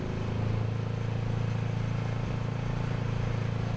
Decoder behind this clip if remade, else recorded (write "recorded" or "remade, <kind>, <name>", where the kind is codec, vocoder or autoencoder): recorded